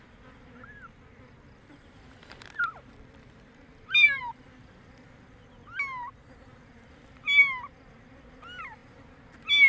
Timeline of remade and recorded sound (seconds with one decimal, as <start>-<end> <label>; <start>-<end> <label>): 0.0-2.2 recorded; 2.2-4.2 remade; 4.2-9.7 recorded